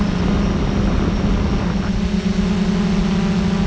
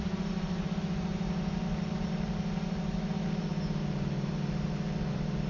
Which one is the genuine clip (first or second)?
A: first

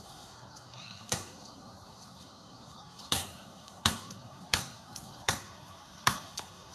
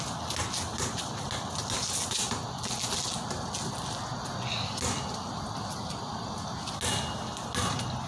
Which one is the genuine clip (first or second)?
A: second